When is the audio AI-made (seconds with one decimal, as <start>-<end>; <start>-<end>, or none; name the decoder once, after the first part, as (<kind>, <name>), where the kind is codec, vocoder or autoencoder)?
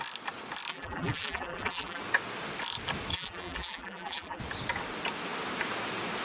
0.7-2.0 (vocoder, BigVGAN v2); 3.1-4.4